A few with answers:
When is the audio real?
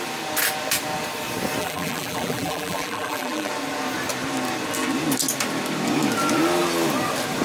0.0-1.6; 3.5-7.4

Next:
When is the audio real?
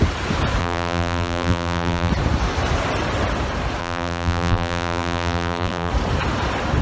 0.0-0.6; 2.1-3.8; 5.9-6.8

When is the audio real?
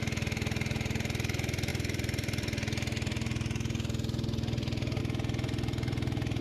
0.0-1.7; 5.0-6.4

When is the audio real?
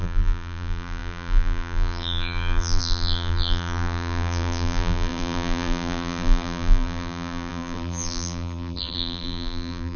none